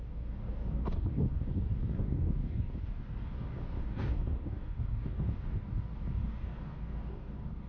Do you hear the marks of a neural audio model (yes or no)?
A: yes